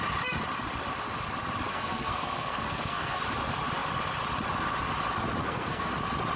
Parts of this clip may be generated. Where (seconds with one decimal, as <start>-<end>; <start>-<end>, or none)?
1.7-3.2; 5.4-5.9